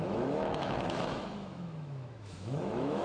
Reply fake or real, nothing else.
fake